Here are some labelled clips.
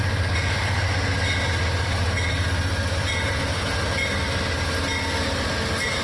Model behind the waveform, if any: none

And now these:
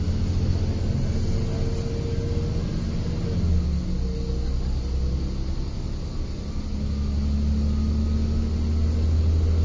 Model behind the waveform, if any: none